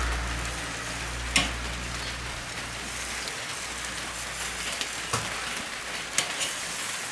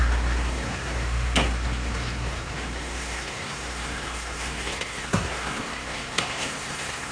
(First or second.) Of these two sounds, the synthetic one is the second